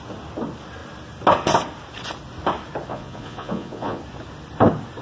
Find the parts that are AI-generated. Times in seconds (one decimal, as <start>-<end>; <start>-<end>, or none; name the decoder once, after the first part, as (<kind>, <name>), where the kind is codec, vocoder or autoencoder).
2.9-4.0 (vocoder, Vocos)